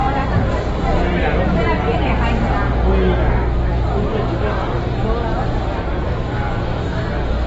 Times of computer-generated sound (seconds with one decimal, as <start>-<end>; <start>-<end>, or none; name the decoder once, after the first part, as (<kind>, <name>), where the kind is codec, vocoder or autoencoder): 0.0-2.5 (vocoder, BigVGAN v2)